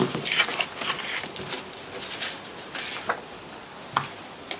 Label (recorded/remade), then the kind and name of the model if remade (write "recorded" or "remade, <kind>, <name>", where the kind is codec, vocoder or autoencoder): recorded